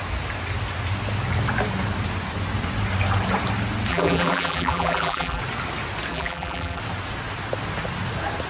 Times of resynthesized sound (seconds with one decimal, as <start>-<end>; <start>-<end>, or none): 3.9-5.4; 6.1-6.8